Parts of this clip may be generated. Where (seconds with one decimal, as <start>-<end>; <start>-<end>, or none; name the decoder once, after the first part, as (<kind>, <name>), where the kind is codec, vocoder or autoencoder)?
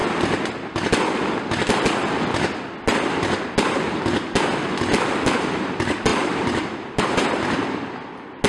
6.1-7.0 (vocoder, BigVGAN v2)